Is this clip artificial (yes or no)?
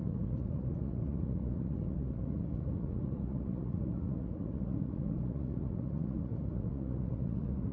yes